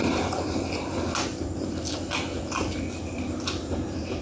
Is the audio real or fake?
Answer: real